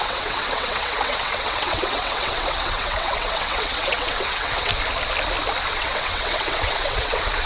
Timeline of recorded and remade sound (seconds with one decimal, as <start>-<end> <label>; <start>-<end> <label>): 0.0-4.7 remade; 4.7-5.7 recorded; 5.7-7.5 remade